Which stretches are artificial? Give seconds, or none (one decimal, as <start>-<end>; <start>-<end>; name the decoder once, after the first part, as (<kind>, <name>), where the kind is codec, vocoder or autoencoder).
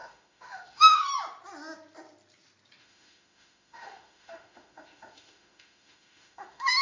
0.0-1.1 (autoencoder, DAC-VAE); 2.8-6.8